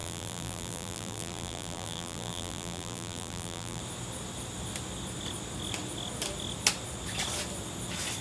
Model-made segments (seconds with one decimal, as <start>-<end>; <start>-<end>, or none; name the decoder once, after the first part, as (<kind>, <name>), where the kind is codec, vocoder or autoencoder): 0.0-3.8 (vocoder, BigVGAN v2)